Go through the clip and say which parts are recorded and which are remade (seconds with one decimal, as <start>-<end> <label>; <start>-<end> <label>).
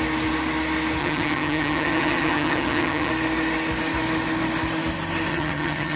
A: 0.0-1.0 recorded; 1.0-3.1 remade; 3.1-5.3 recorded; 5.3-6.0 remade